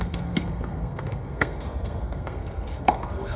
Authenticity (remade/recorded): remade